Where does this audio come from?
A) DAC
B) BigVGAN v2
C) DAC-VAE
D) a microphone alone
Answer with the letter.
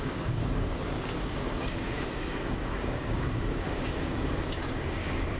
A